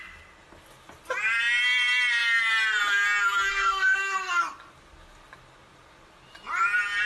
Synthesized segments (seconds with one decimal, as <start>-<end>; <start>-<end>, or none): 3.5-4.4